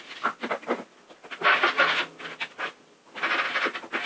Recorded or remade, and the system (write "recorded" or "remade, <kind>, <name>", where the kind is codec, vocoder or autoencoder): remade, vocoder, BigVGAN v2